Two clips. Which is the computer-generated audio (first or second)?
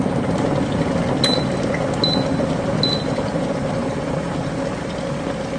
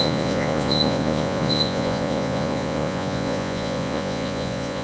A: second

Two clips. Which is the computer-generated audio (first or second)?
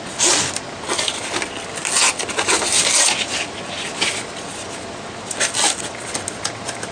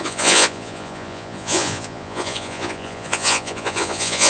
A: second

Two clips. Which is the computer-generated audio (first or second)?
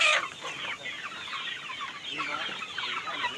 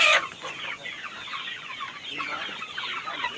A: second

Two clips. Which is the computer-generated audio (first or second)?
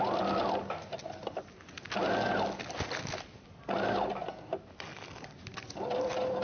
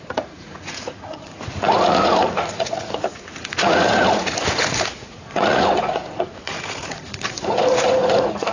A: second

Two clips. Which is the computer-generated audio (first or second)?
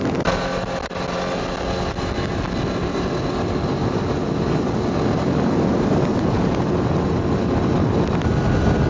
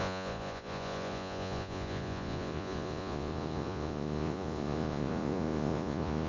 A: second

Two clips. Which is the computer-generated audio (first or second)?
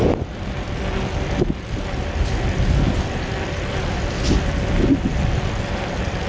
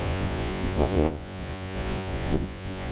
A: second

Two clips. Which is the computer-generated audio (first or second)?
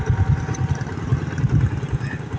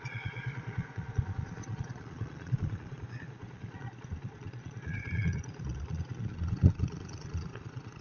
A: second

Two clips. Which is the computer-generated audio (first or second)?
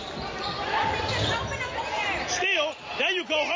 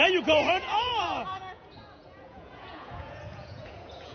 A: second